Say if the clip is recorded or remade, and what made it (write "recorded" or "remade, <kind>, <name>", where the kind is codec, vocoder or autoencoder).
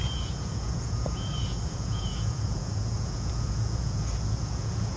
remade, vocoder, Vocos